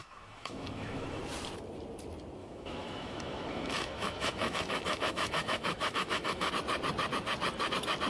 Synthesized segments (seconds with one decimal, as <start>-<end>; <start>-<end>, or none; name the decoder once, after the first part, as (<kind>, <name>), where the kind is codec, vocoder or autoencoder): 0.0-1.2 (autoencoder, DAC-VAE); 2.4-6.5